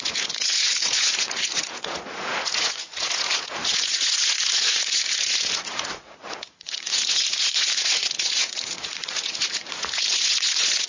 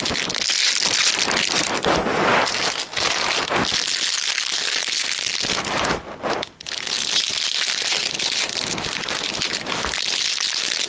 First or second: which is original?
second